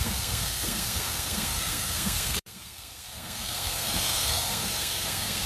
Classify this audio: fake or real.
fake